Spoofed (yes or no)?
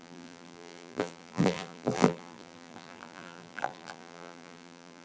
yes